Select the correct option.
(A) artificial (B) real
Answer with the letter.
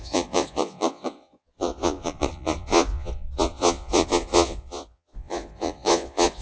A